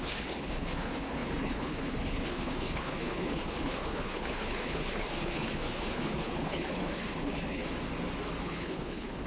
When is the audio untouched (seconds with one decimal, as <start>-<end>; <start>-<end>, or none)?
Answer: 7.6-8.4